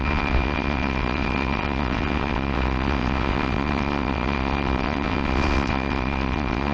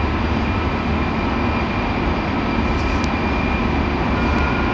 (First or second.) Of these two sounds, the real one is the second